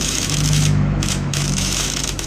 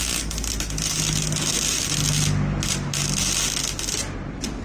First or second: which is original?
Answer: second